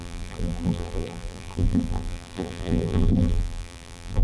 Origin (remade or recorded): remade